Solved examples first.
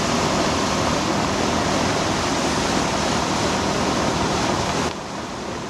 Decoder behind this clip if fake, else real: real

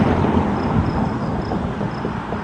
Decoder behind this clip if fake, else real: real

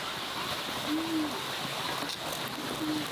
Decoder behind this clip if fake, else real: real